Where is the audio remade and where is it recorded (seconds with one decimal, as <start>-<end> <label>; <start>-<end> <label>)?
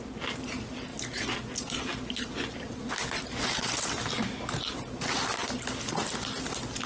0.0-6.9 recorded